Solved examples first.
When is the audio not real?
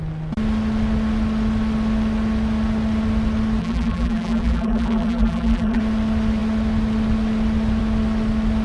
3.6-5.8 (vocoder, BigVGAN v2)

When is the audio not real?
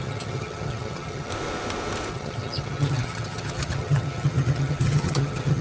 0.0-1.3 (vocoder, HiFi-GAN); 2.1-5.6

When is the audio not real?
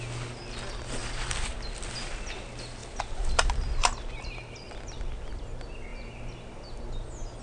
none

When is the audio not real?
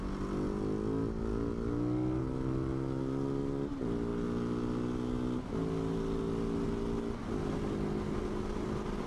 none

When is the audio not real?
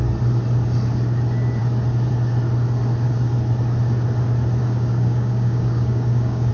4.6-6.5 (codec, DAC)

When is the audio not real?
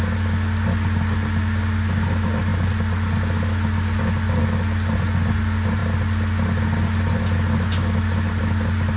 none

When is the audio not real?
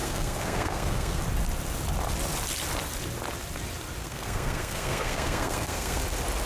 0.0-1.2 (codec, SNAC); 4.0-6.0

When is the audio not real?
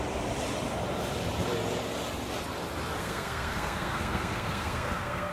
3.0-5.3 (codec, SNAC)